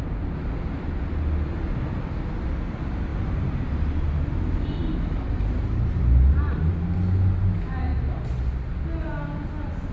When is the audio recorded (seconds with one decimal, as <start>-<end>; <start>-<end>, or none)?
0.0-9.9